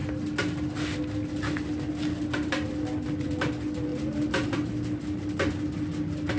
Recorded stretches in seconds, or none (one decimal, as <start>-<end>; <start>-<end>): 0.0-3.9; 4.7-6.4